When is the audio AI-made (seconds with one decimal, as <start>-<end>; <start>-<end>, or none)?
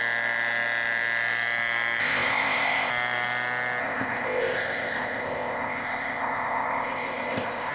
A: 2.0-2.9; 3.8-7.7